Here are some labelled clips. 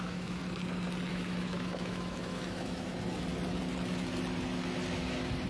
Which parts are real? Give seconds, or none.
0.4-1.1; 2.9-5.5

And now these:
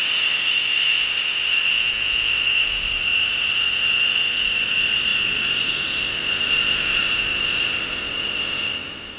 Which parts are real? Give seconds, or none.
0.0-1.7; 2.3-9.2